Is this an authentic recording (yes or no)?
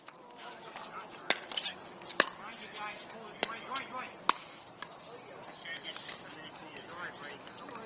yes